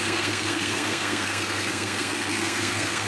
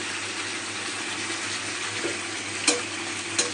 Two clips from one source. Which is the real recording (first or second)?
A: second